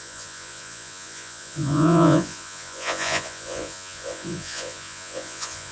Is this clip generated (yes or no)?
yes